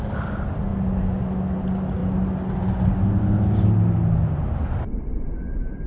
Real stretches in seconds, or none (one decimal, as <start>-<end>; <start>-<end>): 0.0-5.9